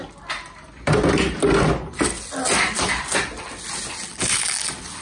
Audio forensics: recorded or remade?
recorded